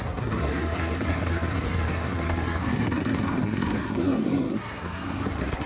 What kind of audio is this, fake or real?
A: fake